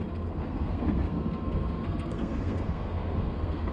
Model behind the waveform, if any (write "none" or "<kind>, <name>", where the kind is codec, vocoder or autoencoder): codec, SNAC